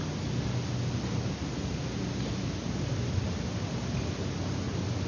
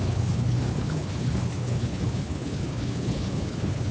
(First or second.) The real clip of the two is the first